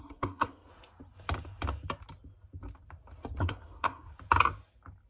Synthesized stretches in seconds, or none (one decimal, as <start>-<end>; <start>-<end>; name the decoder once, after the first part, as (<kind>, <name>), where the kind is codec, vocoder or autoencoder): 0.0-0.7 (codec, SNAC); 3.4-4.1